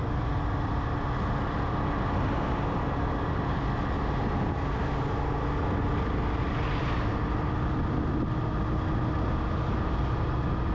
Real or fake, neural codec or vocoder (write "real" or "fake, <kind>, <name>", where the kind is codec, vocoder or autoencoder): real